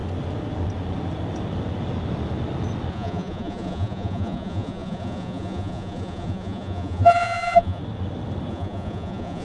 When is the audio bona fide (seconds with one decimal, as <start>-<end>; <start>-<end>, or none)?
0.0-2.9; 7.8-8.5